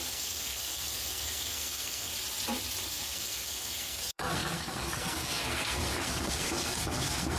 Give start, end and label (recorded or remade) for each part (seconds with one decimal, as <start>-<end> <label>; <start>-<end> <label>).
0.0-2.1 remade; 2.1-2.9 recorded; 2.9-7.4 remade